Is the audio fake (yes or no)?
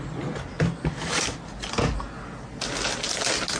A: no